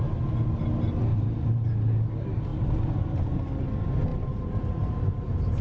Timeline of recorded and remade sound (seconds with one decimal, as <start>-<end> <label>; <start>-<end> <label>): 0.0-1.1 recorded; 1.1-1.7 remade; 1.7-4.1 recorded; 4.1-5.6 remade